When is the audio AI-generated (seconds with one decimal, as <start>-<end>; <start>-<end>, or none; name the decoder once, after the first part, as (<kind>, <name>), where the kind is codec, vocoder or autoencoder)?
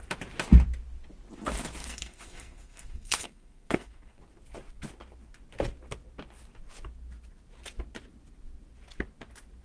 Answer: 1.8-4.2 (codec, SNAC)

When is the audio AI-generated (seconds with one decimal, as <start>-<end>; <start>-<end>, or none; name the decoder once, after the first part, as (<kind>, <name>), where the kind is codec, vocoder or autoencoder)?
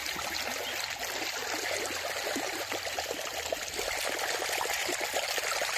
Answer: none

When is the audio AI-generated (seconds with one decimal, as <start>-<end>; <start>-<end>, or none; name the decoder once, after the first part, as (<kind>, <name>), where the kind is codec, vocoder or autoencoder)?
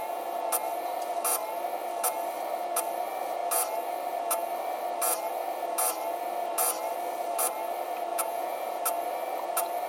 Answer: 8.1-8.8 (vocoder, Vocos)